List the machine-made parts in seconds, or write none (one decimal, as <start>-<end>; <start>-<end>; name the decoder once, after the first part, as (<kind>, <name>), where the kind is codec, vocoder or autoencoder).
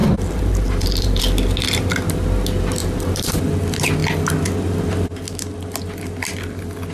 0.0-1.2 (vocoder, BigVGAN v2); 2.8-3.4